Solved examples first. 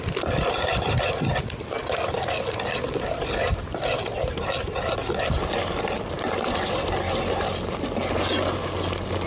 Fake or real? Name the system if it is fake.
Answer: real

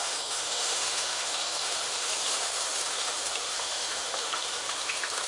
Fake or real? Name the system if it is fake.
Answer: fake, autoencoder, DAC-VAE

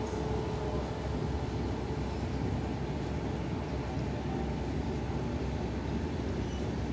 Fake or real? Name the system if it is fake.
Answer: real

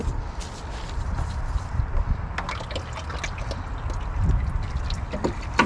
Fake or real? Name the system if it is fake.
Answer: real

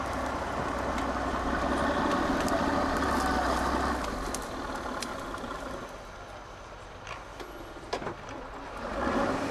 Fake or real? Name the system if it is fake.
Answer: real